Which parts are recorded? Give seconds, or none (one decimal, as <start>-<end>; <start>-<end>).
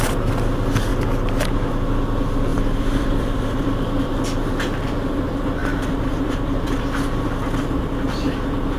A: 0.0-2.5; 4.1-8.8